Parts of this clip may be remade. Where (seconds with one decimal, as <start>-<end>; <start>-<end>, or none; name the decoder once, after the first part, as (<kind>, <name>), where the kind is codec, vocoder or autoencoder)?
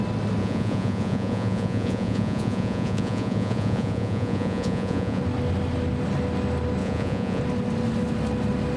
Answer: 0.4-5.2 (vocoder, Vocos); 6.8-7.4